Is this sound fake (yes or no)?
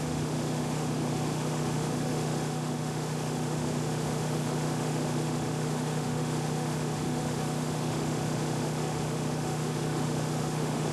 yes